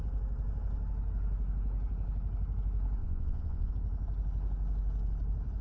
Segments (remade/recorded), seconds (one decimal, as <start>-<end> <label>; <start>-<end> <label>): 0.0-3.0 recorded; 3.0-3.7 remade; 3.7-5.6 recorded